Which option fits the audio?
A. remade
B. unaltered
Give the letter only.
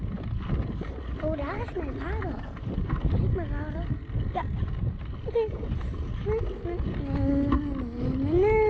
B